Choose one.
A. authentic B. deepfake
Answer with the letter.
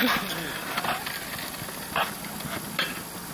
A